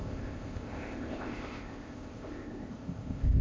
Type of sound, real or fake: fake